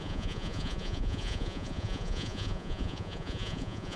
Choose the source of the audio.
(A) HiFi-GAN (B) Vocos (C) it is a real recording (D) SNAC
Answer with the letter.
B